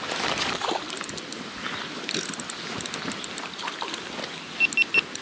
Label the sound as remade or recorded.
recorded